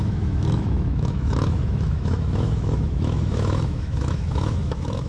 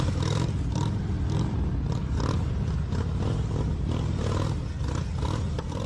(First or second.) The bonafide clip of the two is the second